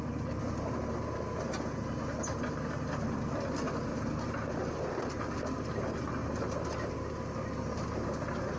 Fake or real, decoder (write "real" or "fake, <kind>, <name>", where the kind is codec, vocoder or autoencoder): real